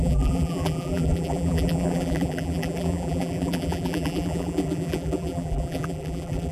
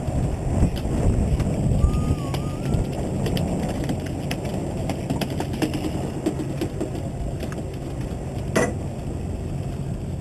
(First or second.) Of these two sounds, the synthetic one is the first